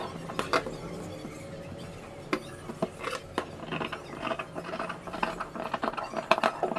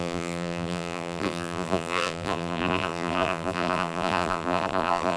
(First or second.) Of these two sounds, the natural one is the first